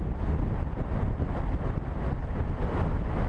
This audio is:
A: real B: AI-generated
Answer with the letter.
A